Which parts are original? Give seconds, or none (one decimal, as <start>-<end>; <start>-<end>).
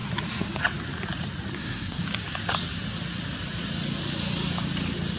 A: 0.0-1.5; 2.0-5.2